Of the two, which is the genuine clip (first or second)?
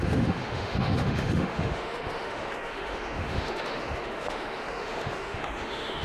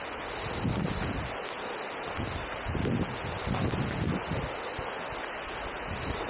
second